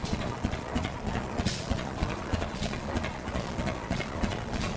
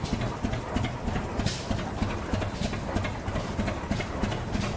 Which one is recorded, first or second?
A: second